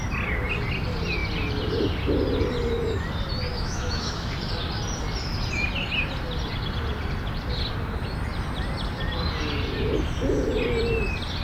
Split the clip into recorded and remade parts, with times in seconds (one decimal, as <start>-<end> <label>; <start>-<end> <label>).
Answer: 0.0-3.5 recorded; 3.5-4.3 remade; 4.3-11.4 recorded